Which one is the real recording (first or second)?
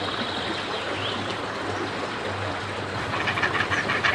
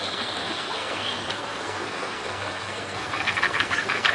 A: first